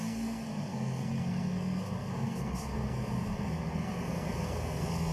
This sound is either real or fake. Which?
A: fake